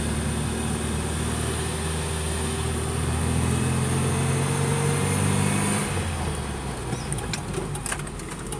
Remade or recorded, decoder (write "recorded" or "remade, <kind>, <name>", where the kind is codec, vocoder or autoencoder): recorded